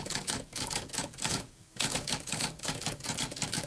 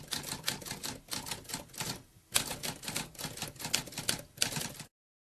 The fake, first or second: first